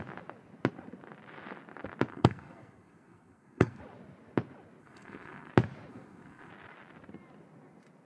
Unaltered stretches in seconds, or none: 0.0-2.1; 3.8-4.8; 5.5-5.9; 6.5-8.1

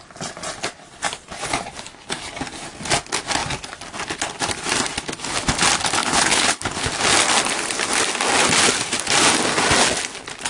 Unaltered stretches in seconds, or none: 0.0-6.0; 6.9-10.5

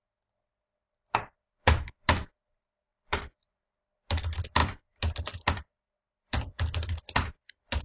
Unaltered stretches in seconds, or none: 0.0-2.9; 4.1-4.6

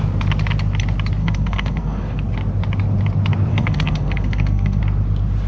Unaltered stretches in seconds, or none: 0.0-1.2; 2.2-3.5; 4.8-5.5

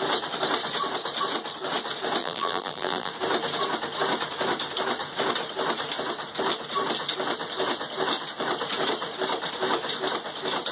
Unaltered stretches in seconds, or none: 0.0-2.2; 3.1-10.7

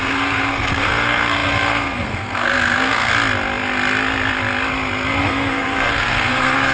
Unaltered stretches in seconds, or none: 3.1-5.2

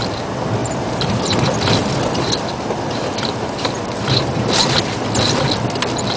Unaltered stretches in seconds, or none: 0.0-0.6; 1.4-1.8; 4.2-6.2

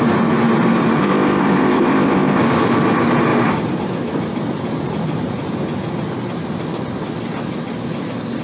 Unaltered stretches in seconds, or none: 0.0-1.0; 2.4-8.4